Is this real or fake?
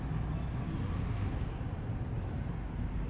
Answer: real